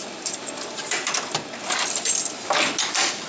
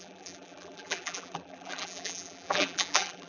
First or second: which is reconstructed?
second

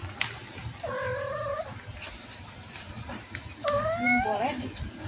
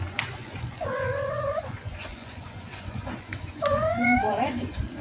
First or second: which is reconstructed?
second